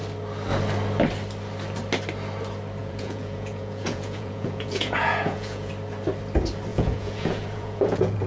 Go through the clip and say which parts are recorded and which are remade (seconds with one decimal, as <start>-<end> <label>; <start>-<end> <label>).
0.0-2.8 recorded; 2.8-5.7 remade; 5.7-6.7 recorded; 6.7-8.3 remade

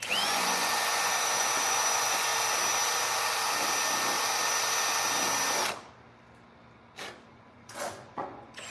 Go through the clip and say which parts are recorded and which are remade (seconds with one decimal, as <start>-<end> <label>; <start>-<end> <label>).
0.0-2.3 remade; 2.3-7.3 recorded; 7.3-8.7 remade

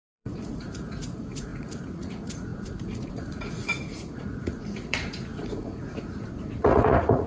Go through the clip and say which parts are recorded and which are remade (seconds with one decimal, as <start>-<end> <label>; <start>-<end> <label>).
0.0-7.3 remade

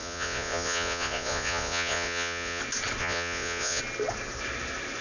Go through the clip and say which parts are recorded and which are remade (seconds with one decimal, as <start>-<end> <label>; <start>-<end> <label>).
0.0-2.6 remade; 2.6-3.0 recorded; 3.0-3.8 remade; 3.8-5.0 recorded